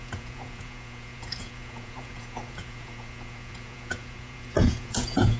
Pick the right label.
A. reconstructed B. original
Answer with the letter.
A